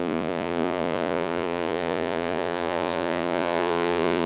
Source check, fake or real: fake